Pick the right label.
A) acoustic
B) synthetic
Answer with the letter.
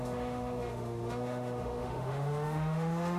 B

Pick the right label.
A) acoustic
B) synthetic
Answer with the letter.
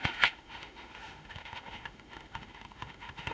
B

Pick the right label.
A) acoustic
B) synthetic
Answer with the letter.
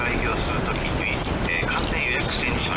A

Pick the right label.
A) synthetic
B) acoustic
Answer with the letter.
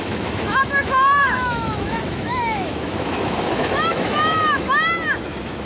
A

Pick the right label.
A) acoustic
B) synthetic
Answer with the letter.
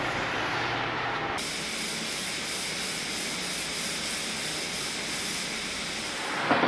A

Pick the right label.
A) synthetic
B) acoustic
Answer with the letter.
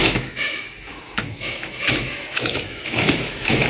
A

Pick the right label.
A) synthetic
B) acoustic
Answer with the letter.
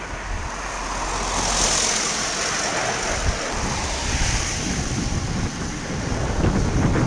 B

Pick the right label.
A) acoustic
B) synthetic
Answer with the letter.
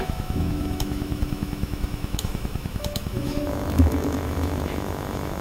B